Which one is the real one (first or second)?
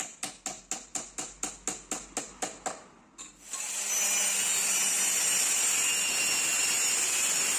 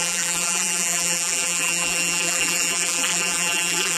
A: first